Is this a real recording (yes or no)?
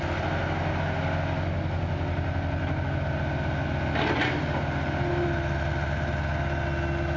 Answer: yes